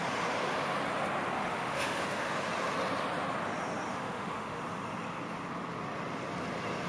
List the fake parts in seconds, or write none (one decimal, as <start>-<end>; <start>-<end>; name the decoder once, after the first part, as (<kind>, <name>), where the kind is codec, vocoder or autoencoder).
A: 1.5-2.3 (autoencoder, DAC-VAE); 3.9-4.6